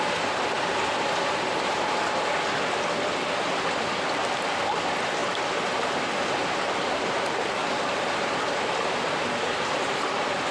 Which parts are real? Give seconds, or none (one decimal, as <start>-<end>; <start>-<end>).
0.0-10.5